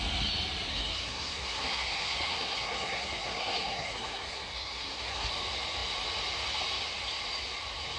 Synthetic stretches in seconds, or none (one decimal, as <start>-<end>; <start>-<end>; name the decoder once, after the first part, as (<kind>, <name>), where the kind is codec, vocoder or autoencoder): 0.7-5.3 (codec, SNAC)